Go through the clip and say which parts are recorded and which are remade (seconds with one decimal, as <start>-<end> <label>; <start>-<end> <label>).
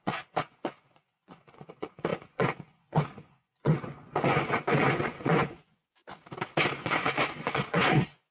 0.0-6.0 remade; 6.0-6.7 recorded; 6.7-8.3 remade